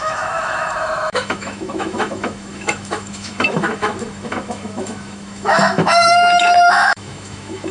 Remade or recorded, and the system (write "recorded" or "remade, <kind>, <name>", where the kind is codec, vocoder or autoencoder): remade, autoencoder, DAC-VAE